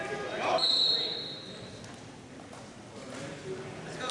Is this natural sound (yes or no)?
yes